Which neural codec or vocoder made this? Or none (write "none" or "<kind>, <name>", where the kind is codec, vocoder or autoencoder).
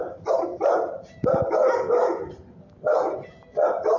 none